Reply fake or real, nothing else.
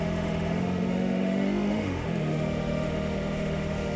fake